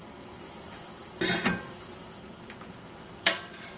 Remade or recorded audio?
recorded